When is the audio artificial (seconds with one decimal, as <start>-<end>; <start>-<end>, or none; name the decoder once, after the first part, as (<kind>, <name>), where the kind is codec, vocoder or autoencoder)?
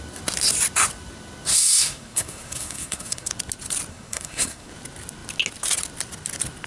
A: 1.5-3.3 (codec, SNAC); 3.9-4.7